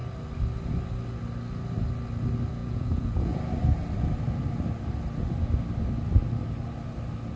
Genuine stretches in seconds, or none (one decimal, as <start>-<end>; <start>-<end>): 0.0-2.6; 3.4-7.4